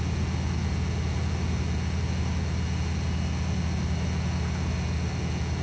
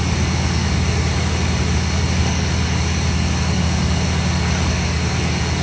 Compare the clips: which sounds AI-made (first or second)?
second